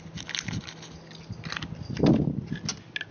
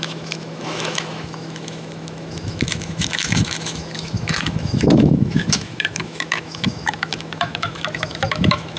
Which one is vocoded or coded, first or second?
second